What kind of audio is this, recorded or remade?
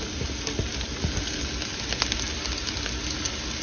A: recorded